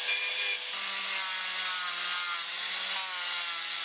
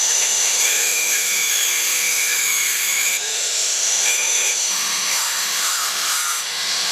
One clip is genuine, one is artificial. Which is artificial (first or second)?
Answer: second